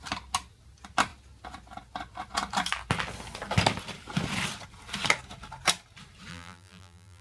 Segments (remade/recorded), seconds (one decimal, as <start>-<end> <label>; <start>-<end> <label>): 0.0-6.3 recorded; 6.3-7.2 remade